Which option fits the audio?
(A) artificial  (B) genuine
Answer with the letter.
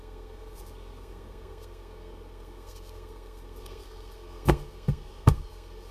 A